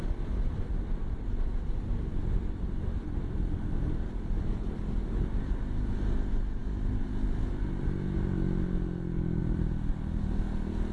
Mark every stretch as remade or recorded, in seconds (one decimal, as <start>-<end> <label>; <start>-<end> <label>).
0.0-10.9 recorded